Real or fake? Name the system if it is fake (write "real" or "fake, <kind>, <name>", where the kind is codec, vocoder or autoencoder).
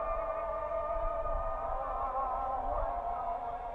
fake, vocoder, BigVGAN v2